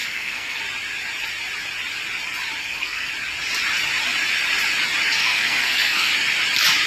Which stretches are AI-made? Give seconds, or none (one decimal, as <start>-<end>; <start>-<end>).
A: 0.0-0.6; 2.6-3.1; 5.2-6.1